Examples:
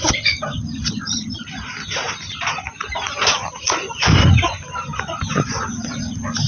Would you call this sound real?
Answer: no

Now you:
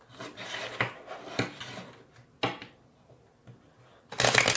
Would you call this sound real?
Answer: yes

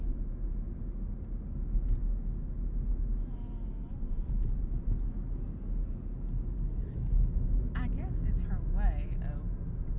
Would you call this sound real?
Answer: yes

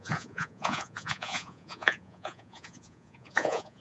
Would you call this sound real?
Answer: no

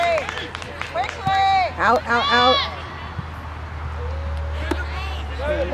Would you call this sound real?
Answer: yes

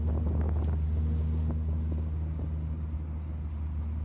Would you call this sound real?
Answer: yes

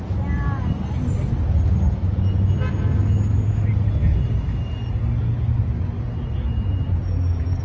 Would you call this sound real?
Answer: yes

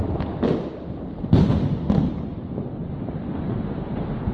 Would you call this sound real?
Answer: yes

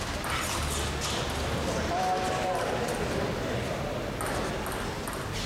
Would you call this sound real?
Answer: yes